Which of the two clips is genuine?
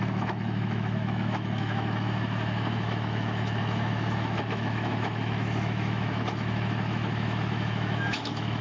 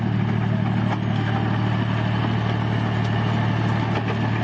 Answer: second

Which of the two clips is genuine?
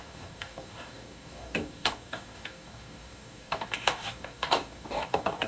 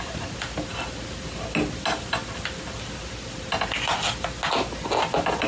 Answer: second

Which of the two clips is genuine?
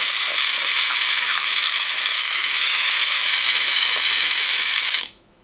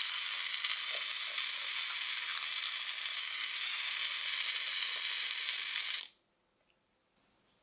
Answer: second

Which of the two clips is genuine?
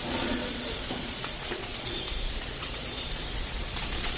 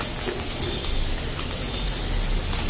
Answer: second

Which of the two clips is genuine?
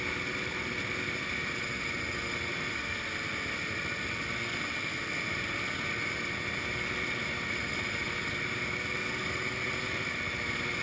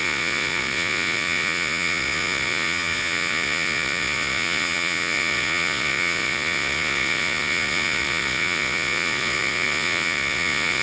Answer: first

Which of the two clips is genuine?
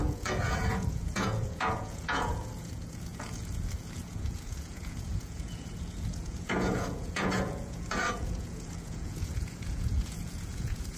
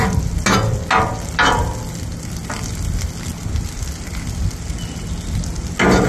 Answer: second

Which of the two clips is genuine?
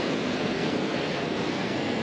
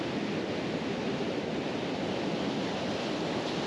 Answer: second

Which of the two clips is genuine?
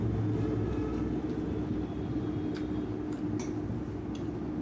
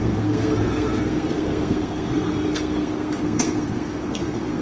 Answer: first